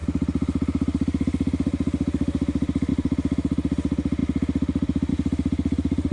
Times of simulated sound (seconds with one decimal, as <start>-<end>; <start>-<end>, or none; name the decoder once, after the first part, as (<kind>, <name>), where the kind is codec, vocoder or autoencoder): 4.2-5.1 (vocoder, BigVGAN v2)